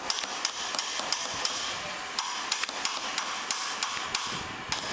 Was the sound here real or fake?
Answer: real